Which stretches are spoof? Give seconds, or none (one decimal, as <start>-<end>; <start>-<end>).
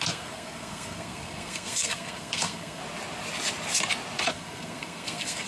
0.0-2.8; 4.3-5.5